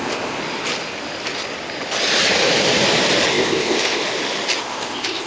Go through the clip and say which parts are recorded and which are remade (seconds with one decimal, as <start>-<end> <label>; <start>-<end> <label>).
0.0-0.4 remade; 0.4-3.3 recorded; 3.3-4.0 remade; 4.0-4.6 recorded; 4.6-5.3 remade

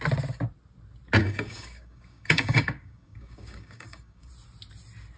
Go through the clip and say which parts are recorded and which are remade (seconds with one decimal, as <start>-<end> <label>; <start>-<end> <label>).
0.0-1.2 recorded; 1.2-4.3 remade; 4.3-5.2 recorded

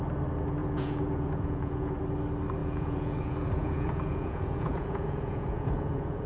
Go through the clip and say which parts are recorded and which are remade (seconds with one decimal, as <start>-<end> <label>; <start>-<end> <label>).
0.0-0.6 recorded; 0.6-2.0 remade; 2.0-2.6 recorded; 2.6-6.3 remade

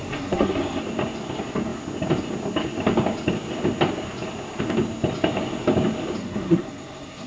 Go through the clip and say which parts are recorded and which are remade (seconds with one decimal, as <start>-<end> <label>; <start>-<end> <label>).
0.0-0.8 remade; 0.8-6.2 recorded; 6.2-7.3 remade

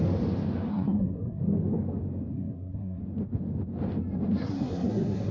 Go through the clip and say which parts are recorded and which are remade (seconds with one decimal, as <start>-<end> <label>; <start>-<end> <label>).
0.0-0.7 recorded; 0.7-1.4 remade; 1.4-2.3 recorded; 2.3-3.0 remade; 3.0-4.4 recorded; 4.4-5.3 remade